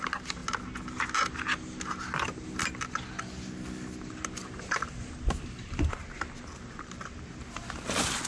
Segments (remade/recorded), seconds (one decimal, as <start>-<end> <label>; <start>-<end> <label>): 0.0-8.3 recorded